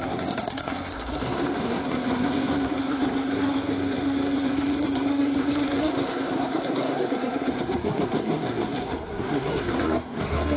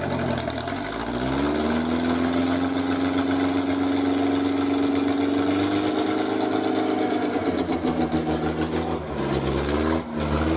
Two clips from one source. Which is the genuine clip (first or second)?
second